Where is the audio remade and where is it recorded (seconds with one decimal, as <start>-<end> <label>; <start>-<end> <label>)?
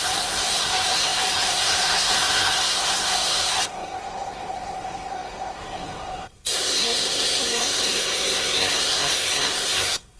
0.0-10.2 remade